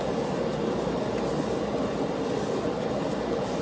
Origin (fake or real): real